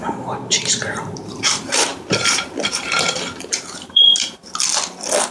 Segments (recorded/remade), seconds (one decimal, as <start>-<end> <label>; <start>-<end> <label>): 0.0-4.4 remade; 4.4-5.3 recorded